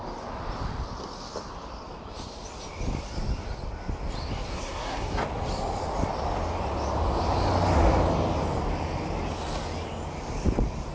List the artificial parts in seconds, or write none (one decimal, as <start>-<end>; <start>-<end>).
4.5-5.2